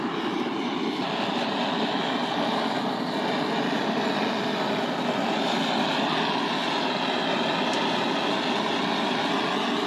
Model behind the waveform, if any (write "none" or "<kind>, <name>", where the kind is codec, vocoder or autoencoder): none